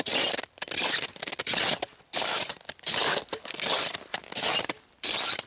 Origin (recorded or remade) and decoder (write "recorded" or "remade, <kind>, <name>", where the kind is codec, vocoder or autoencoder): recorded